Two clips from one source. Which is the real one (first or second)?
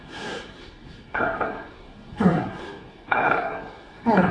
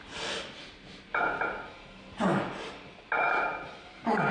second